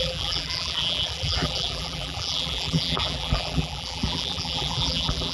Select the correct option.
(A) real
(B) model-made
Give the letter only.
B